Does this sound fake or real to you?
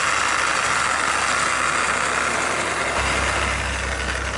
real